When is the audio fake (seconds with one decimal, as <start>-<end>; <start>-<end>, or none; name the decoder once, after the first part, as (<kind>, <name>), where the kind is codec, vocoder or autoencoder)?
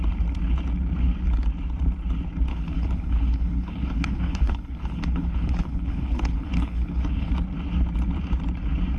2.5-7.3 (codec, HILCodec)